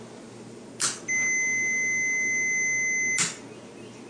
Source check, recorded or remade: recorded